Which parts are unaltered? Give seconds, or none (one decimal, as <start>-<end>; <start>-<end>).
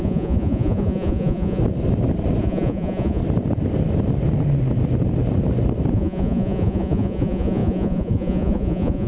1.6-2.4; 3.2-5.9